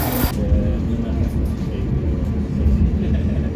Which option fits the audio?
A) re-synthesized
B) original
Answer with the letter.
B